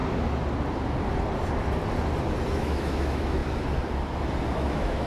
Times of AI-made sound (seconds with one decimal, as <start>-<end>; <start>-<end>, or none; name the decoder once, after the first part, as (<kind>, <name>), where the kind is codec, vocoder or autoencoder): 2.5-3.4 (autoencoder, DAC-VAE); 4.5-5.1